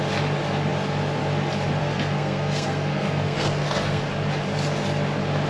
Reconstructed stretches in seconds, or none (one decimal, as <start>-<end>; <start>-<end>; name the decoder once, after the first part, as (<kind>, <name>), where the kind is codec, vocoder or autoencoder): 1.8-4.0 (codec, SNAC)